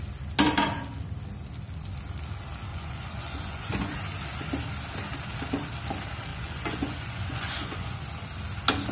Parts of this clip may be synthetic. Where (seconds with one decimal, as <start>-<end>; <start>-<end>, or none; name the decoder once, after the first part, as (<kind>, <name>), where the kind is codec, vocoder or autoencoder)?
2.7-4.0 (vocoder, Vocos); 6.3-8.0